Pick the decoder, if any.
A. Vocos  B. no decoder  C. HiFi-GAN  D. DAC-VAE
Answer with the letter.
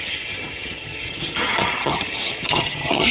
C